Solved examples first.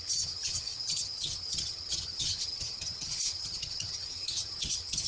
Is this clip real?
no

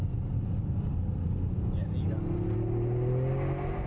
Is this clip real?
yes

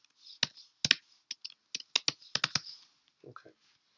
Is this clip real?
yes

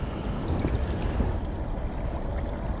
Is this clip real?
yes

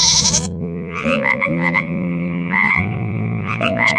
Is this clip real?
no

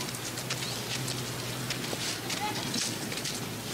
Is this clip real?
yes